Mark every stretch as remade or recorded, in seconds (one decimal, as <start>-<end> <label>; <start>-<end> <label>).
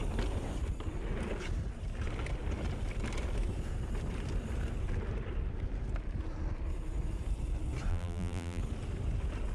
0.0-7.9 recorded; 7.9-8.6 remade; 8.6-9.5 recorded